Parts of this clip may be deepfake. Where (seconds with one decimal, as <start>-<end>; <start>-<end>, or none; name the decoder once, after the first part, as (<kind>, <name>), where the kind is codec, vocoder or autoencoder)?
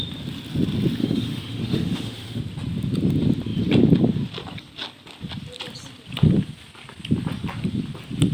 1.0-2.4 (autoencoder, DAC-VAE)